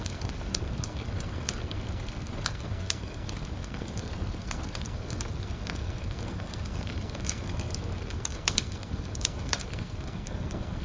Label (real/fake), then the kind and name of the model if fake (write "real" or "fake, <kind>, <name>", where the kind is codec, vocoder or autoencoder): fake, codec, SNAC